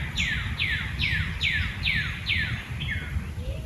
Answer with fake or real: real